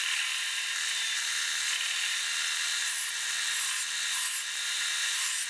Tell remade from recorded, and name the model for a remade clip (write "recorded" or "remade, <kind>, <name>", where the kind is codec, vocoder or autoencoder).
recorded